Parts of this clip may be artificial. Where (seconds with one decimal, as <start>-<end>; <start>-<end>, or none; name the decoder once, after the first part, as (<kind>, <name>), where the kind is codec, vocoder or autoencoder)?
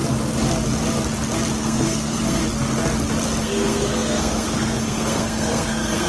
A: 1.6-2.4 (codec, SNAC); 3.4-6.1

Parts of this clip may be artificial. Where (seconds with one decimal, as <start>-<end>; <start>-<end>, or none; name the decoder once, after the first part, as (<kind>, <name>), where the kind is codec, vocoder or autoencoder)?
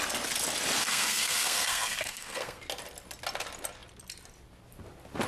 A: 0.8-2.6 (codec, SNAC)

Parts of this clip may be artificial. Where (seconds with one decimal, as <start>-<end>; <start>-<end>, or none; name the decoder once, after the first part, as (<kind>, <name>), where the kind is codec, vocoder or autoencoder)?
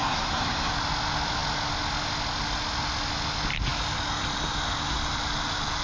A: 0.0-0.7 (codec, SNAC)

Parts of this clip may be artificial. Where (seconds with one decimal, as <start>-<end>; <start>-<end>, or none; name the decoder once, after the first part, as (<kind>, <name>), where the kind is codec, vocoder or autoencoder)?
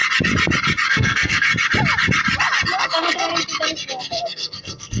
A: 0.9-1.5 (codec, SNAC); 2.8-3.3; 3.9-5.0